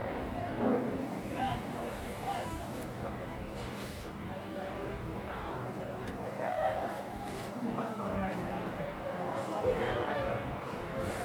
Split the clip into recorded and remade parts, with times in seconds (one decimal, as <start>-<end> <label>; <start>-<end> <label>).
0.0-11.2 remade